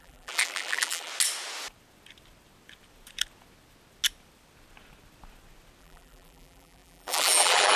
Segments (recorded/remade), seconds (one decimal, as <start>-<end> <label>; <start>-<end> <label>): 0.0-1.1 remade; 1.1-5.8 recorded; 5.8-7.8 remade